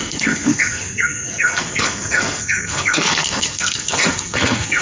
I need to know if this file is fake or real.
fake